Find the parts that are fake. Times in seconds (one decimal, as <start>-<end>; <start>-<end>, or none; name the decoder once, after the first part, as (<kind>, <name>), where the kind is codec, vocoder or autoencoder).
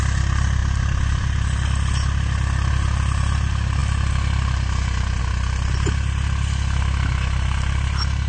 none